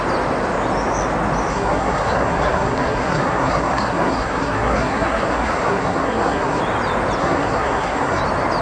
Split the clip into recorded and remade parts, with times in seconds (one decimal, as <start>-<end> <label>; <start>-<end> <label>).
0.0-1.5 recorded; 1.5-6.6 remade; 6.6-7.2 recorded; 7.2-8.2 remade; 8.2-8.6 recorded